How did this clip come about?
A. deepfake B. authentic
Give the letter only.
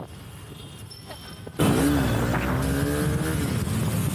B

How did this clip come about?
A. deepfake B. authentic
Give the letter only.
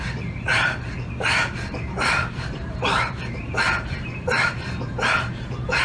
A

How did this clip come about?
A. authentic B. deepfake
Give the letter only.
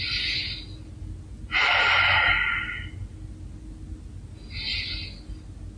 A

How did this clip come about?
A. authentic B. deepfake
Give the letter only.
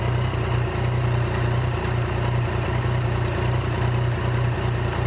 A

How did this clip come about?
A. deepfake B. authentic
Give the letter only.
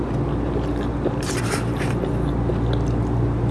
B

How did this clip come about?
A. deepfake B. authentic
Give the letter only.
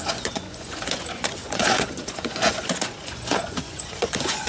A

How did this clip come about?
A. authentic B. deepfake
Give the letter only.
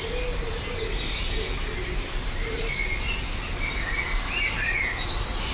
A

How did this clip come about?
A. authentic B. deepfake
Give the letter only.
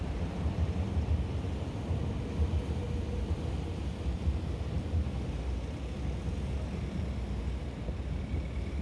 A